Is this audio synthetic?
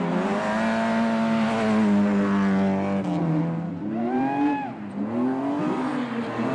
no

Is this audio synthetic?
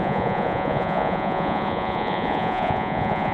yes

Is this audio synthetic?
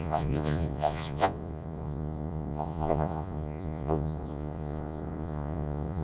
yes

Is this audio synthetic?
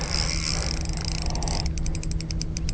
no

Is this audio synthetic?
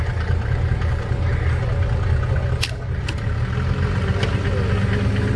no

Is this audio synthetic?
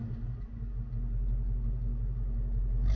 no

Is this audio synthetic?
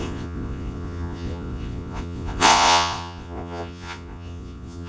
yes